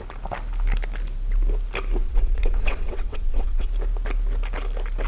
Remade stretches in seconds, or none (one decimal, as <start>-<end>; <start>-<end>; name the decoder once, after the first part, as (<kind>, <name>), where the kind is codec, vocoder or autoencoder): 2.0-3.7 (vocoder, WaveNeXt)